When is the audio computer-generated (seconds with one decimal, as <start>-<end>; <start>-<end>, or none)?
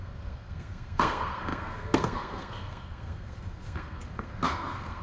0.0-5.0